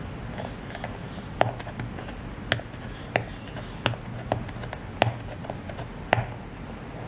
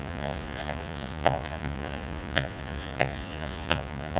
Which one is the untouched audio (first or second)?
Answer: first